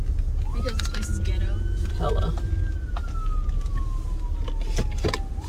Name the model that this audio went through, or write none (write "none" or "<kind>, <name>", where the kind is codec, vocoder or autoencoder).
none